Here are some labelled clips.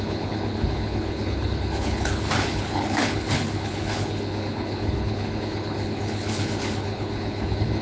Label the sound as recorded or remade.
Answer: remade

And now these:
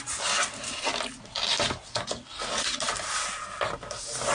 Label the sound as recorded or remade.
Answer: recorded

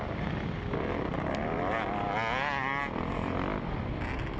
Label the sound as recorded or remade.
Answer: recorded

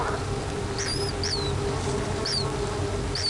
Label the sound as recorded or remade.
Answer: recorded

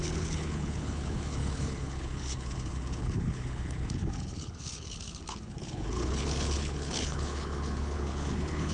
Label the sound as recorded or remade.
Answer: remade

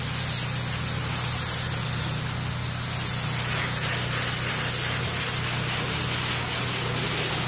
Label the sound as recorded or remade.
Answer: recorded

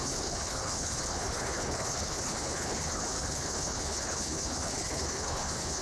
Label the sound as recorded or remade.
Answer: remade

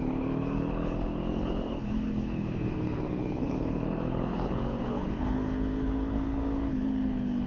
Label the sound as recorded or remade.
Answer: remade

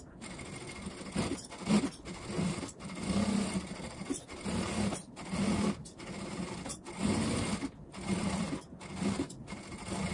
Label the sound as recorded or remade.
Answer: recorded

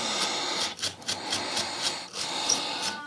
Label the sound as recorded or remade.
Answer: recorded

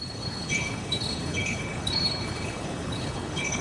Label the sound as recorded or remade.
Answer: remade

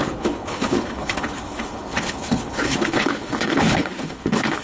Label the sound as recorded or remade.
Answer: remade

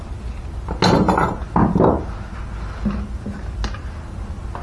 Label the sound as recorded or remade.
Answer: recorded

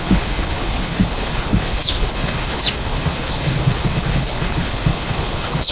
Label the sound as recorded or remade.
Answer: remade